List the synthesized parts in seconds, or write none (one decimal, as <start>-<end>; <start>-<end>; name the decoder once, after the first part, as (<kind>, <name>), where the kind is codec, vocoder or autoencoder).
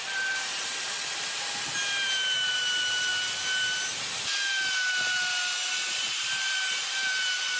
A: 0.0-0.7 (vocoder, BigVGAN v2); 2.5-3.1; 5.9-7.6